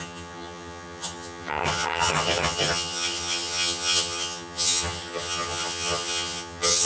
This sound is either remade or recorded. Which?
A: remade